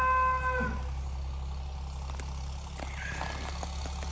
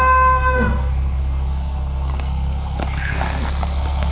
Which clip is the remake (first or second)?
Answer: second